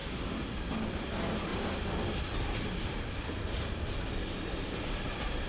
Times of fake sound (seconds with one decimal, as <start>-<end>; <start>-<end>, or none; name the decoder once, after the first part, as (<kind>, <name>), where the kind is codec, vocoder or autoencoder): 0.0-1.5 (vocoder, BigVGAN v2); 4.8-5.5